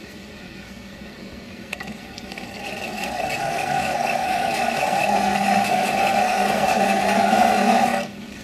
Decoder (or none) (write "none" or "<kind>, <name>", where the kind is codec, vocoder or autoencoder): codec, SNAC